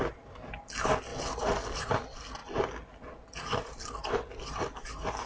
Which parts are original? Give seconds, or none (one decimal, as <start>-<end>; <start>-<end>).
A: 0.0-5.3